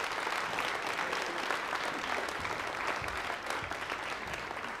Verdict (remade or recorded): recorded